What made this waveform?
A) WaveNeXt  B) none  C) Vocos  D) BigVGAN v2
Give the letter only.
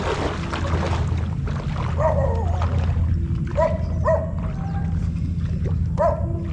B